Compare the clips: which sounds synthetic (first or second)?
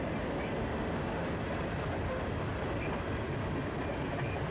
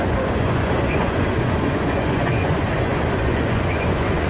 second